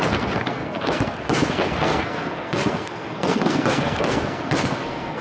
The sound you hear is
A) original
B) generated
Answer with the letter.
B